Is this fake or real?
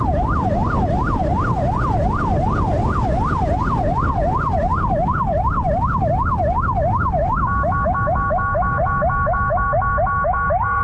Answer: real